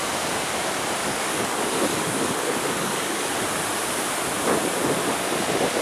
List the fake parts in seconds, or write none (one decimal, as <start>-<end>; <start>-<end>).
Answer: 1.0-3.3